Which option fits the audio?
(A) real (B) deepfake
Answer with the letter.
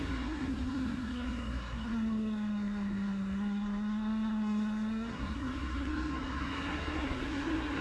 B